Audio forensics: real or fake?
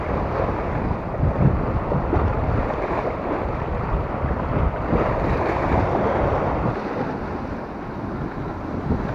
real